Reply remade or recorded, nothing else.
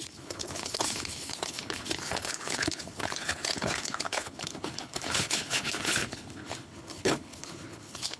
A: remade